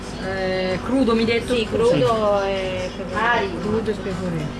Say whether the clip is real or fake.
real